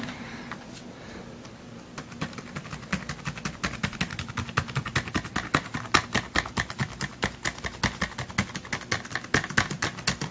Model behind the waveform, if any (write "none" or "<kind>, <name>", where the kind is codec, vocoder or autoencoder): none